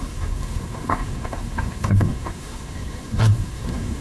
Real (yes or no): no